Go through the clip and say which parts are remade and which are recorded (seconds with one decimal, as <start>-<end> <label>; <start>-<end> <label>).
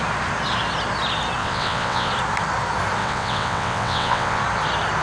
0.0-1.4 recorded; 1.4-2.1 remade; 2.1-3.0 recorded; 3.0-4.4 remade; 4.4-5.0 recorded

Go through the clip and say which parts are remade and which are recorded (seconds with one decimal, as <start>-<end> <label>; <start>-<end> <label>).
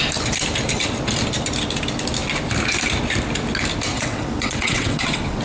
0.0-3.9 recorded; 3.9-5.4 remade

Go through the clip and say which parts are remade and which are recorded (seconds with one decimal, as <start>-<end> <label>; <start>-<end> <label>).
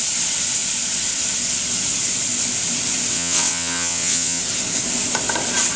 0.0-3.1 recorded; 3.1-4.4 remade; 4.4-5.8 recorded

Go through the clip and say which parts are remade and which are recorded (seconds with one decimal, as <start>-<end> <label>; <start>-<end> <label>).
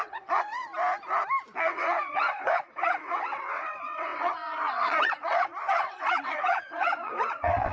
0.0-0.7 remade; 0.7-1.6 recorded; 1.6-7.7 remade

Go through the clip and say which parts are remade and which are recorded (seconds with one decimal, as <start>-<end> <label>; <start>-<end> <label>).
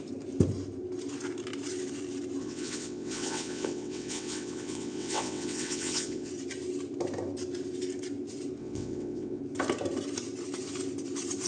0.0-2.4 recorded; 2.4-6.3 remade; 6.3-8.6 recorded; 8.6-9.4 remade; 9.4-11.5 recorded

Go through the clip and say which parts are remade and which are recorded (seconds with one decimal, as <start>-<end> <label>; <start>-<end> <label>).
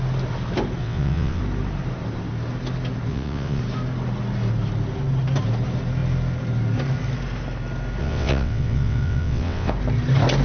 0.0-0.8 recorded; 0.8-1.4 remade; 1.4-3.1 recorded; 3.1-3.6 remade; 3.6-8.0 recorded; 8.0-9.7 remade; 9.7-10.4 recorded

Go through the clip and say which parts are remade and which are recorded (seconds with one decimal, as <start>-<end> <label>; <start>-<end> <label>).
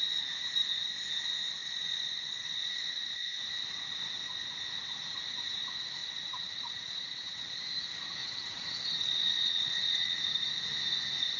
0.0-1.6 recorded; 1.6-3.1 remade; 3.1-6.0 recorded; 6.0-7.6 remade; 7.6-8.2 recorded; 8.2-10.2 remade; 10.2-11.4 recorded